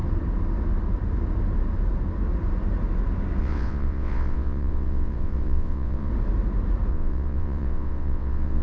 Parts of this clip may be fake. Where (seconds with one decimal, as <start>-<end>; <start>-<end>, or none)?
3.4-6.1; 6.9-8.6